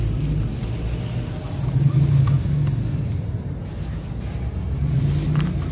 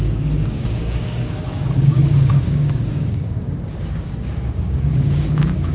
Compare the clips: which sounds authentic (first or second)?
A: first